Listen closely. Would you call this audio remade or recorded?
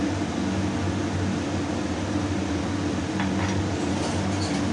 recorded